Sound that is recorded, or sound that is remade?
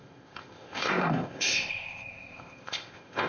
remade